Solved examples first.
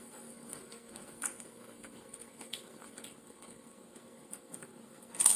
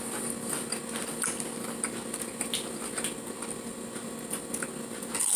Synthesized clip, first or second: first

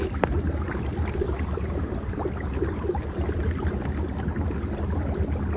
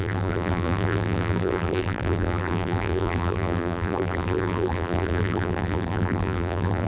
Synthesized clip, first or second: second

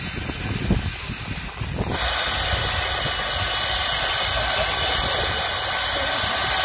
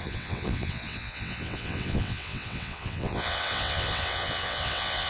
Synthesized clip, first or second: second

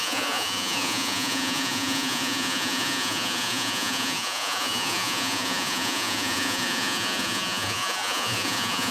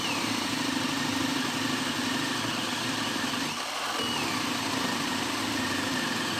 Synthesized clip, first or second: first